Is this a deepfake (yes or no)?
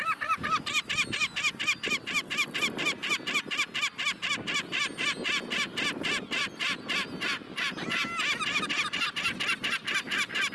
no